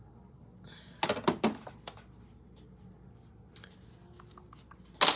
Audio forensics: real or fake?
real